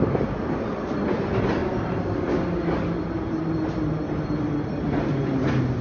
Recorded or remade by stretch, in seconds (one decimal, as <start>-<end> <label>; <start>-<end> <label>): 0.0-5.8 recorded